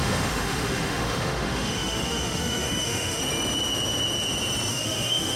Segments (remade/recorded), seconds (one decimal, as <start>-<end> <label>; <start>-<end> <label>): 0.0-3.2 remade; 3.2-4.7 recorded; 4.7-5.4 remade